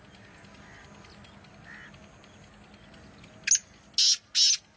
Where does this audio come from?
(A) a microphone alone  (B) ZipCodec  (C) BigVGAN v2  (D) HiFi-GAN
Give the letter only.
A